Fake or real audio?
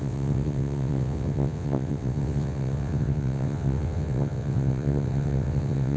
fake